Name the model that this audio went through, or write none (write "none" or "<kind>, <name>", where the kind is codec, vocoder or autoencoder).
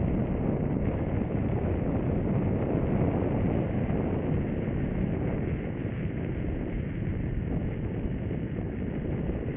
none